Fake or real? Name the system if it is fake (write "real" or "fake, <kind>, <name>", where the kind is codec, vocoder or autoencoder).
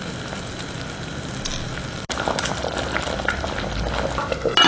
real